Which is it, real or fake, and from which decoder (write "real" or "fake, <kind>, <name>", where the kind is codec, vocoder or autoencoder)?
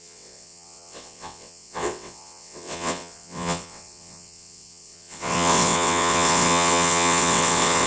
fake, vocoder, WaveNeXt